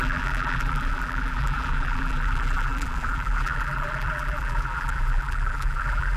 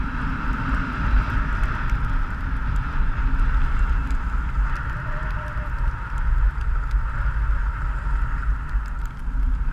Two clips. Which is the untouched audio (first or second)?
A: second